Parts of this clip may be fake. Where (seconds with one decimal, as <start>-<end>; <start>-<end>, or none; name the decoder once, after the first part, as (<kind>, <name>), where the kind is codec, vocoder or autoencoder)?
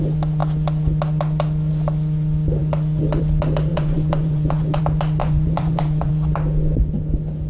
3.7-4.8 (vocoder, Vocos); 5.2-6.1